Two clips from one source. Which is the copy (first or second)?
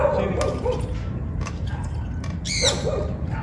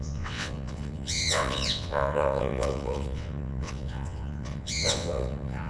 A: second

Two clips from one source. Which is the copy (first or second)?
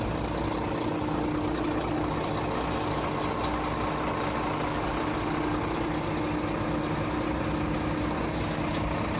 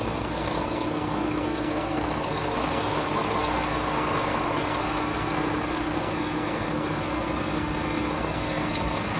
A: second